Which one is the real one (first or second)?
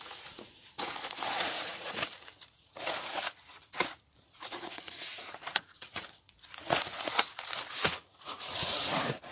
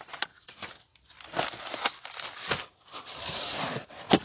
second